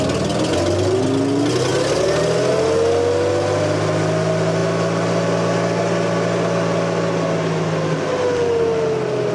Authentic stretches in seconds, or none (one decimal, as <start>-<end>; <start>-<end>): 0.0-9.3